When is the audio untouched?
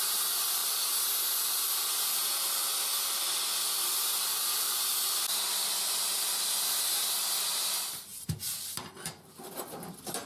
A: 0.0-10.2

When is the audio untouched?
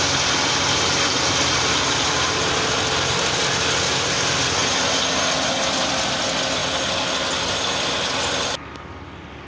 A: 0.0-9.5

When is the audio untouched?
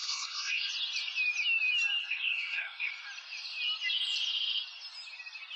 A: 0.7-2.0; 2.9-5.6